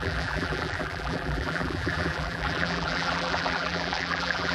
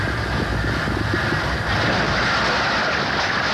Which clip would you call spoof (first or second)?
first